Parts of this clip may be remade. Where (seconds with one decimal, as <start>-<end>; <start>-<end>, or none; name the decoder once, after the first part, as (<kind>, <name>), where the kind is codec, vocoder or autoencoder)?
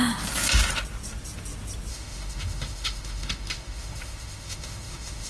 1.9-5.3 (autoencoder, DAC-VAE)